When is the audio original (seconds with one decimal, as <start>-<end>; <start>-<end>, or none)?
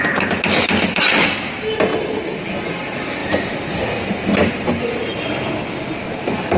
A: 0.0-6.6